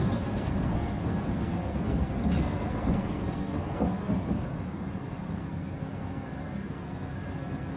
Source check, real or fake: fake